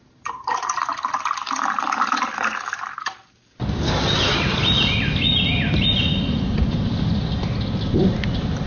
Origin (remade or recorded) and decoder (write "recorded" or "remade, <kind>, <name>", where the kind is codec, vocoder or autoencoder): recorded